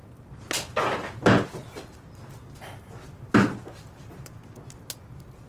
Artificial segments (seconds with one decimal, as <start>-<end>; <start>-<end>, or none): none